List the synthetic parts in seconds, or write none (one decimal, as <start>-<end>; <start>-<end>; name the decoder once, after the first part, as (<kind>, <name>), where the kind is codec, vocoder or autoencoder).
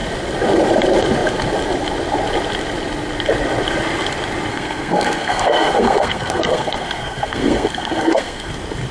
4.5-8.5 (codec, SNAC)